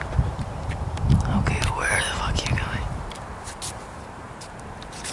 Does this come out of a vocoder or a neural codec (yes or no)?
yes